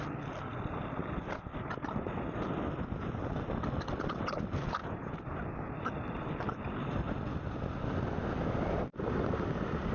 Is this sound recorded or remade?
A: recorded